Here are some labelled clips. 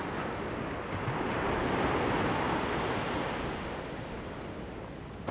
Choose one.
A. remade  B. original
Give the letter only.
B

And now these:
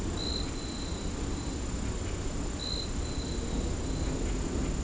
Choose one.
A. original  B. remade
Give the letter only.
A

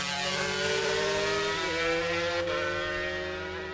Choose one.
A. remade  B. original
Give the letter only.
B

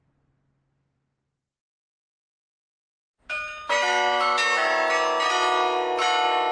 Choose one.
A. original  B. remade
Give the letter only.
A